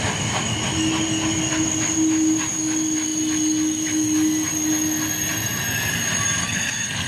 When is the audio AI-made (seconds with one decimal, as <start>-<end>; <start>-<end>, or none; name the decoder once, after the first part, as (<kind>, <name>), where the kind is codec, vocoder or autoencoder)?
6.4-7.1 (codec, SNAC)

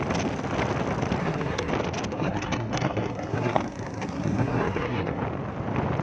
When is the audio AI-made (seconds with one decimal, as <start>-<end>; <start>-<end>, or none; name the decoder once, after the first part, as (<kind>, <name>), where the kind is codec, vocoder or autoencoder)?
1.2-1.7 (codec, SNAC); 2.1-5.2